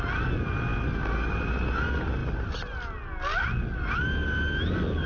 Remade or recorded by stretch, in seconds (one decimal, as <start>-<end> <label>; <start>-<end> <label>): 0.0-5.1 recorded